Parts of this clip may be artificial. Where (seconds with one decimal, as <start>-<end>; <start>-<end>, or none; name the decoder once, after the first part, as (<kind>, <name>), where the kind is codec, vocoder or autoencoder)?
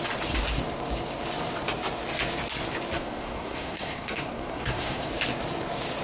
3.0-5.1 (codec, SNAC)